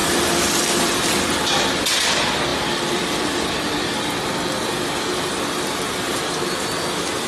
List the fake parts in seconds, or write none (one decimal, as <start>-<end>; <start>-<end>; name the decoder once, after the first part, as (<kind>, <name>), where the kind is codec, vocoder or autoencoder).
0.0-1.1 (vocoder, BigVGAN v2); 2.5-6.4